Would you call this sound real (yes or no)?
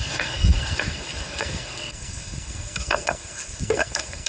no